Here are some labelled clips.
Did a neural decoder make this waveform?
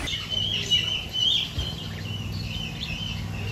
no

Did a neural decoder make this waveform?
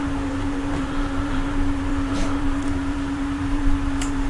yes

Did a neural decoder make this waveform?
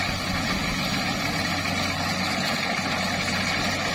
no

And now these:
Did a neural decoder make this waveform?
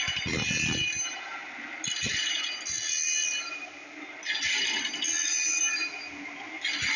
no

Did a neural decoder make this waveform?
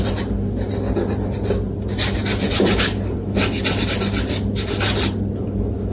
no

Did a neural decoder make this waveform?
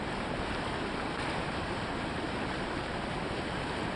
yes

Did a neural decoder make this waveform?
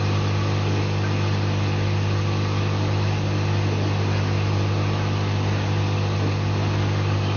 no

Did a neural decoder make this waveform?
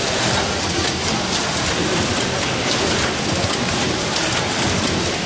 no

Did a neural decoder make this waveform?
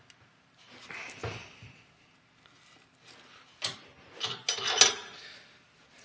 no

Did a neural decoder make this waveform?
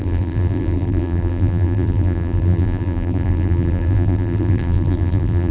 yes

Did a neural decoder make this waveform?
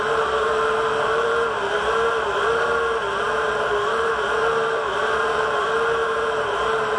yes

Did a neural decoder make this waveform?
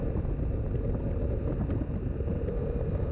no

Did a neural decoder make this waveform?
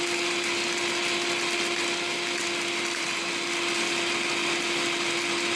no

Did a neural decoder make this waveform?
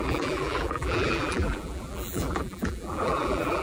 yes